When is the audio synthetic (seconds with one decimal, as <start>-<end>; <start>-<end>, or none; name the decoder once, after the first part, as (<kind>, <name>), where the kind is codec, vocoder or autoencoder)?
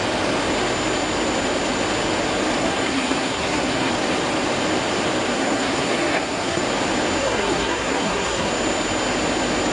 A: 2.6-3.9 (codec, SNAC); 5.3-6.6; 7.2-8.5